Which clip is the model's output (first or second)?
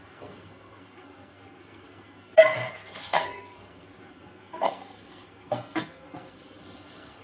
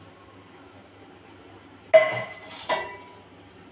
first